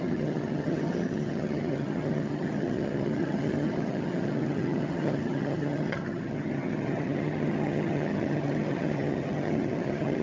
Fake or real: fake